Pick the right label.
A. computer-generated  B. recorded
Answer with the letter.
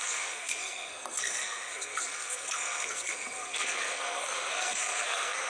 A